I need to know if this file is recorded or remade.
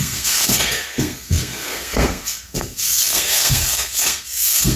remade